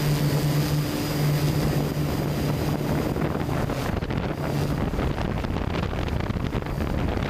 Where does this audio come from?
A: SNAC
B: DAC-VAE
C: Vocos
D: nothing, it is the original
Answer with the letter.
D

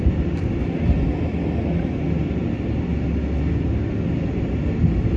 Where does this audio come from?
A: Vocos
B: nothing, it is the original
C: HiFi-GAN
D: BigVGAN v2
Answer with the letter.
B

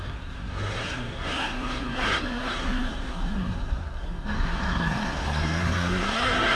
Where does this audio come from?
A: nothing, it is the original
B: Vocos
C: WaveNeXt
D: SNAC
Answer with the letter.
D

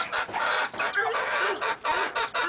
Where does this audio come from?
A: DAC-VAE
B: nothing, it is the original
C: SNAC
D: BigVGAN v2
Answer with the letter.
B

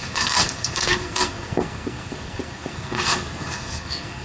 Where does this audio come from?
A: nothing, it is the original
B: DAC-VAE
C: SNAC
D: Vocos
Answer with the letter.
C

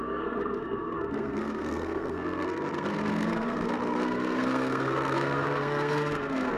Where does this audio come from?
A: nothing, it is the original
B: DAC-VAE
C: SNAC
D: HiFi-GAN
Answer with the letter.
C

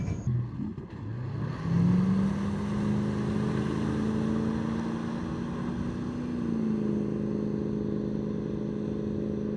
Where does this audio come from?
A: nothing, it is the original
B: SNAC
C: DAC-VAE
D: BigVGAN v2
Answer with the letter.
A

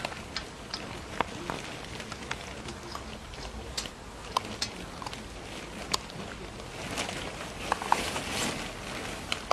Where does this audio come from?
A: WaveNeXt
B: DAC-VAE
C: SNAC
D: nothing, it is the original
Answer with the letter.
D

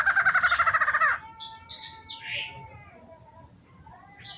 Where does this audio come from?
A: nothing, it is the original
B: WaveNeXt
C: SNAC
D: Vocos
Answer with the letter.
A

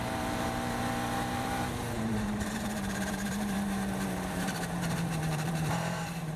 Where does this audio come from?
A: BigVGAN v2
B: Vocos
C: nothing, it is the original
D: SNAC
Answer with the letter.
A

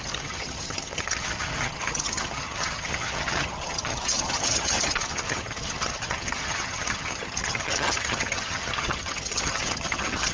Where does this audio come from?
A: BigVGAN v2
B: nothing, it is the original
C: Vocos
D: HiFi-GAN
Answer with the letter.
D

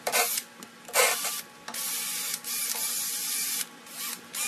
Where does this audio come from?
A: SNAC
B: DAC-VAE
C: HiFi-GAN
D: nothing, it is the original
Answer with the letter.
D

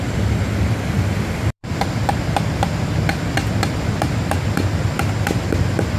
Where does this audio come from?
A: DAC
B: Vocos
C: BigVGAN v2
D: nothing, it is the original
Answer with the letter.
C